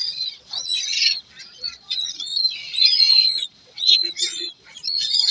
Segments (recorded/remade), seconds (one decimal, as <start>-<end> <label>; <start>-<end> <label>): 0.0-5.3 remade